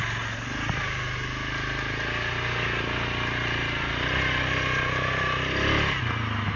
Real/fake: real